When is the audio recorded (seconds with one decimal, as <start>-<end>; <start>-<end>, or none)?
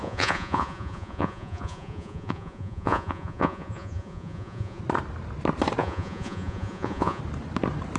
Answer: 4.8-5.8; 7.2-8.0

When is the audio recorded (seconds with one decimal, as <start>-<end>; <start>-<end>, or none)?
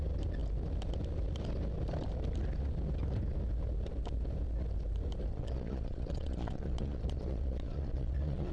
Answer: 0.0-5.3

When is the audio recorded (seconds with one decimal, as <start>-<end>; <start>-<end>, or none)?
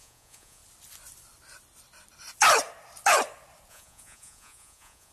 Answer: 0.6-3.7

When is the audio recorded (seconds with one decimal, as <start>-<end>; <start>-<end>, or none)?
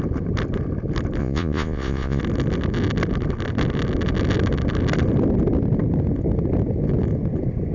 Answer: 0.0-1.2; 2.2-7.7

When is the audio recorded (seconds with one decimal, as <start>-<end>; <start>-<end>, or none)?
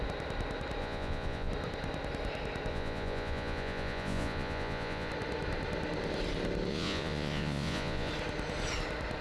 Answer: 0.0-0.8; 1.5-2.7; 5.1-6.7; 8.1-9.2